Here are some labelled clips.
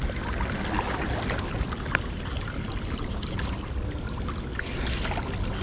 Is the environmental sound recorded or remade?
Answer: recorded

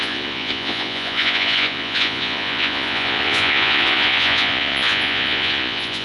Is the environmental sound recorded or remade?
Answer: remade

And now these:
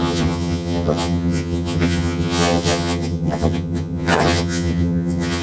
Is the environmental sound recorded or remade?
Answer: remade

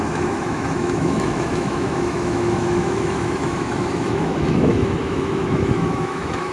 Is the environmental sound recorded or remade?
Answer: remade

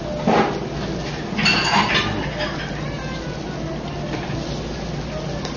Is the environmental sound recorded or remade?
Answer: recorded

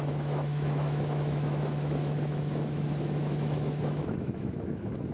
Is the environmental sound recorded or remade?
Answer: remade